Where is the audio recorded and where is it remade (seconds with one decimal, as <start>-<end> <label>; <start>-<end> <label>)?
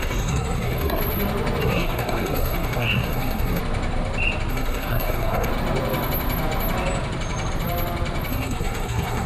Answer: 0.0-1.0 remade; 1.0-1.6 recorded; 1.6-3.6 remade; 3.6-4.5 recorded; 4.5-5.5 remade; 5.5-8.3 recorded; 8.3-9.3 remade